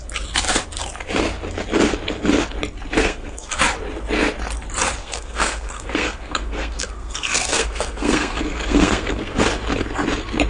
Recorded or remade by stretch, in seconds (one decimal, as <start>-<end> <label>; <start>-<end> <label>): 0.0-3.0 recorded; 3.0-3.6 remade; 3.6-5.0 recorded; 5.0-9.4 remade; 9.4-10.5 recorded